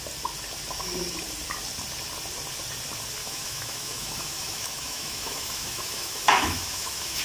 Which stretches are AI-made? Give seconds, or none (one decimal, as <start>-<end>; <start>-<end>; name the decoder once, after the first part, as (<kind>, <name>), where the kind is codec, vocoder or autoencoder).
3.2-7.2 (autoencoder, DAC-VAE)